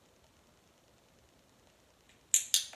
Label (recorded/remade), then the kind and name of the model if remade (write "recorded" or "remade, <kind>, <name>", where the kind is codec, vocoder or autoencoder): recorded